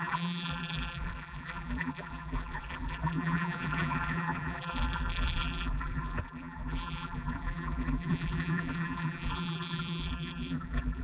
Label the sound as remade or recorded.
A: remade